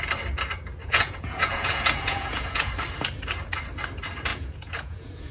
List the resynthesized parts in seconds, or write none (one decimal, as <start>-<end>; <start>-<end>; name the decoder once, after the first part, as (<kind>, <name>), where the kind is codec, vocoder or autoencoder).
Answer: 0.8-2.7 (vocoder, Vocos); 4.3-5.3